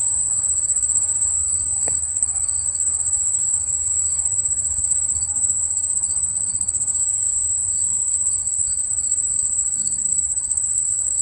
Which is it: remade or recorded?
remade